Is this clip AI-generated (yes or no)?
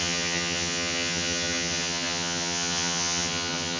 yes